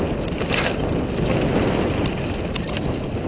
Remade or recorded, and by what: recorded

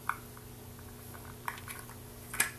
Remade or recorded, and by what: recorded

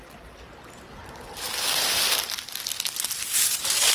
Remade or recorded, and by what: recorded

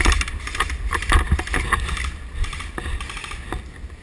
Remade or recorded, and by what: recorded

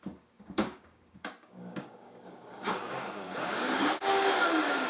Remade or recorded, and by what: remade, codec, DAC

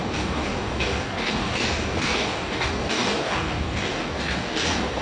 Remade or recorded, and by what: remade, codec, DAC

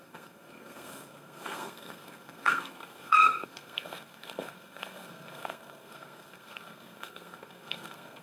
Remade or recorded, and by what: remade, codec, SNAC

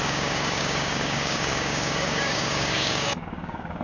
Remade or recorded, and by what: remade, codec, DAC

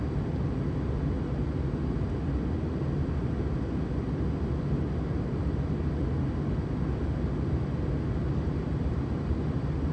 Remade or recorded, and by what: recorded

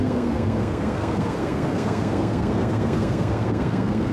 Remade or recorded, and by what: remade, codec, SNAC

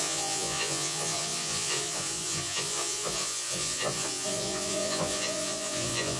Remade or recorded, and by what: remade, vocoder, Vocos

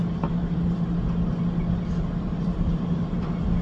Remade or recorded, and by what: recorded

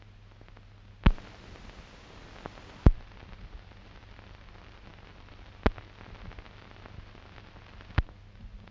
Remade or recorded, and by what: recorded